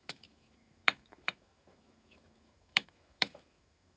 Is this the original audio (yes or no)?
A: no